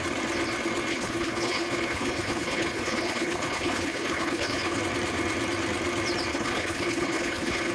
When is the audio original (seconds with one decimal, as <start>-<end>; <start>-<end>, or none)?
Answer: 0.0-0.9; 4.8-6.3